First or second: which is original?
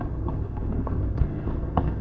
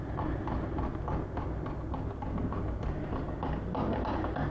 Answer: second